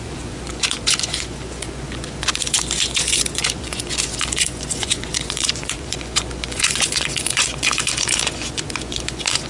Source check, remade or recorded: remade